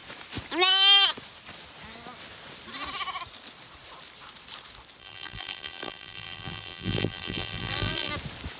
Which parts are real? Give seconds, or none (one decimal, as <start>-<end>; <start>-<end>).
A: 0.0-5.0; 8.1-8.6